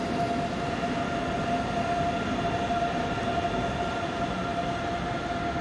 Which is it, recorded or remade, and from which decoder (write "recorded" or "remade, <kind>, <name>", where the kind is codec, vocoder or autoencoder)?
recorded